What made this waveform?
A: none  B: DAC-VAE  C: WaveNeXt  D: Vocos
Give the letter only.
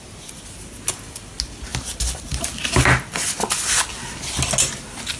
A